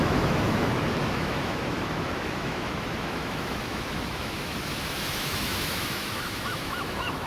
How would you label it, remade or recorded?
remade